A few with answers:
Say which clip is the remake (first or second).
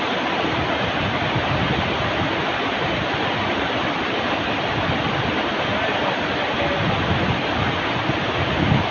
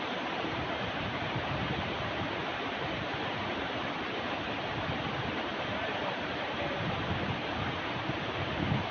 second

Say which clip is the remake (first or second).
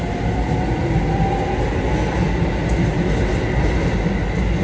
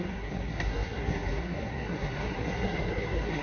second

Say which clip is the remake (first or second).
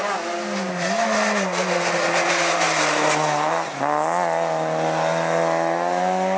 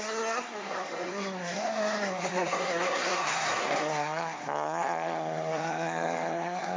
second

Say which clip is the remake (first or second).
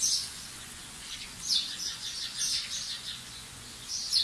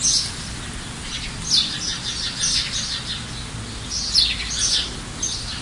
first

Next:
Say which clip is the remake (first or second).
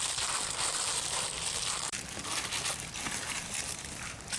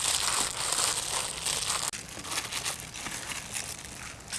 first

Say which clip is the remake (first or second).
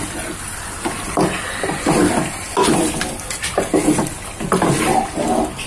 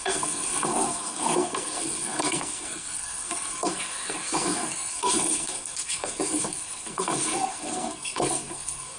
second